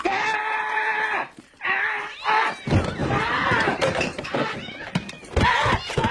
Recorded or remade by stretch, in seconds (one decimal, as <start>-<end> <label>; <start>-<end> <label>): 0.0-0.4 recorded; 0.4-2.0 remade; 2.0-3.0 recorded; 3.0-4.5 remade; 4.5-6.1 recorded